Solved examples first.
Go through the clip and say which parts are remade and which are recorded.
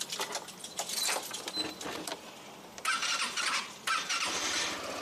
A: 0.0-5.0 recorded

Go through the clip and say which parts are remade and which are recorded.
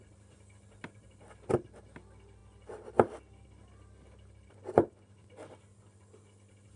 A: 0.0-6.8 recorded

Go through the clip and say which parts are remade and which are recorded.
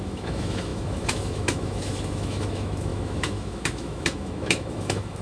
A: 0.0-5.2 remade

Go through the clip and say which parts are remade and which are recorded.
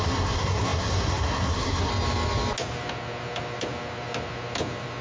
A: 0.0-1.9 remade; 1.9-5.0 recorded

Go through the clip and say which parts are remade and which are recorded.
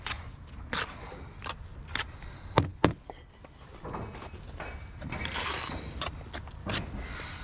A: 0.0-7.4 recorded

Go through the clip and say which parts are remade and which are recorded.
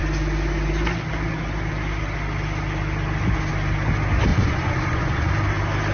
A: 0.0-4.3 recorded; 4.3-5.3 remade; 5.3-5.9 recorded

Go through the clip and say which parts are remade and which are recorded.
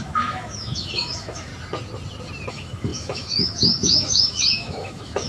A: 0.0-1.5 remade; 1.5-2.5 recorded; 2.5-5.3 remade